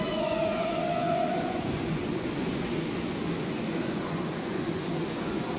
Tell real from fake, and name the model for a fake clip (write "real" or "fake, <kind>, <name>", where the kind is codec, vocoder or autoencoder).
fake, vocoder, Vocos